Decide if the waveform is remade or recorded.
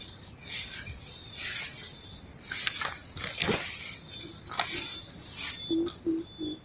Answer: recorded